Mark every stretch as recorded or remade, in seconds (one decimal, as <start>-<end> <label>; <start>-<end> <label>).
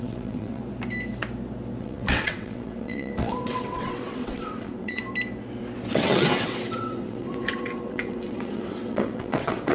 0.0-0.6 remade; 0.6-1.8 recorded; 1.8-5.0 remade; 5.0-5.9 recorded; 5.9-9.7 remade